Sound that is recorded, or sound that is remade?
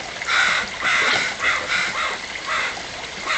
recorded